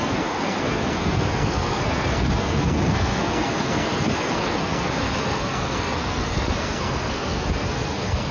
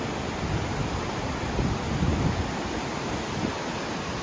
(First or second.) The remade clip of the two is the first